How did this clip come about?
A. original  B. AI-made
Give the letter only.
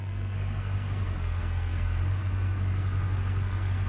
B